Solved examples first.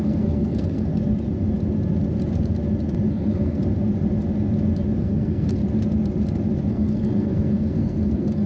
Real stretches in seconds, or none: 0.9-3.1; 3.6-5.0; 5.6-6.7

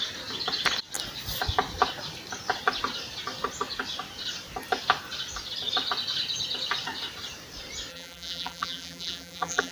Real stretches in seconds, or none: 0.0-7.9

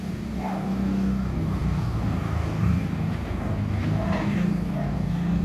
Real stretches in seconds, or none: none

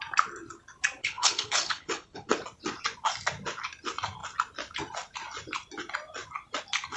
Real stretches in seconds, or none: 0.0-1.0; 2.3-7.0

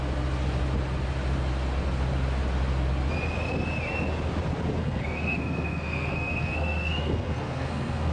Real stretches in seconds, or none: 0.0-4.8

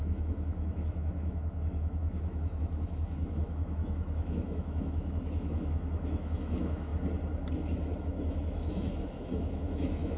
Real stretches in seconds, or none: 6.9-8.0

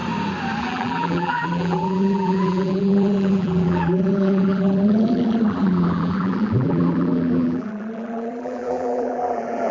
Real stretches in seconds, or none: 0.0-0.6